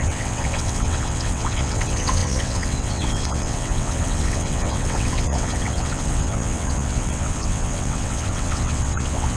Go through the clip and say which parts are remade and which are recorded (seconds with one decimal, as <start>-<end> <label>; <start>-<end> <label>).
0.0-9.4 remade